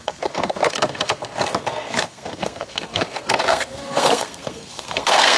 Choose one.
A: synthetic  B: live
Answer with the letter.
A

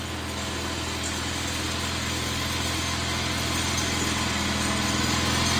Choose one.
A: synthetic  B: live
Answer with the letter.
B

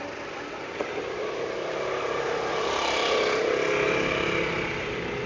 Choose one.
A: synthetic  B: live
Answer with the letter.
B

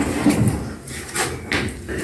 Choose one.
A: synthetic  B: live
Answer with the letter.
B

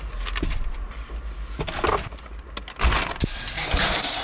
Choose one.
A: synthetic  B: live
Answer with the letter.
B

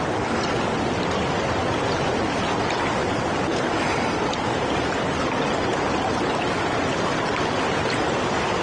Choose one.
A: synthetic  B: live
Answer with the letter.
B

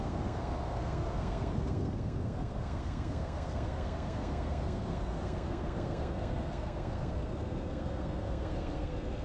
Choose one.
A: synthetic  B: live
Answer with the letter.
A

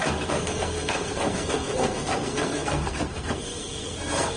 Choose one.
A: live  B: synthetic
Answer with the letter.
B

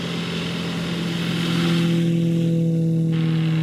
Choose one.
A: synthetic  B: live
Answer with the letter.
B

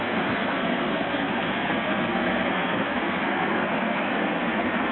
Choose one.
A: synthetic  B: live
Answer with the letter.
A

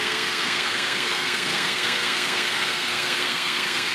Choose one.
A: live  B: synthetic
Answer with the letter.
B